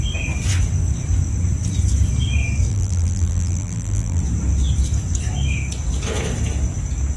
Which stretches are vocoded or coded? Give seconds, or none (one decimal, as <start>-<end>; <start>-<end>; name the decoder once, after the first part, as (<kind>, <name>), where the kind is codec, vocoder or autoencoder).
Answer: 2.7-4.2 (vocoder, BigVGAN v2)